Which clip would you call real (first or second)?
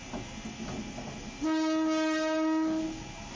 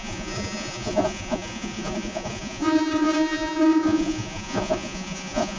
first